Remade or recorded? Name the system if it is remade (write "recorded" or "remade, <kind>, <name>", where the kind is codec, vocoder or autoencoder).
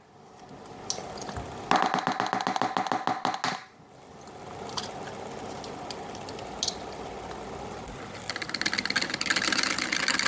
recorded